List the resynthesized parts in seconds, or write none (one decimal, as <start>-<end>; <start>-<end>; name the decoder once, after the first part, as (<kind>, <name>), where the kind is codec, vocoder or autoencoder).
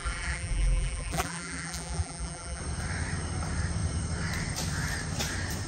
0.0-2.6 (vocoder, BigVGAN v2)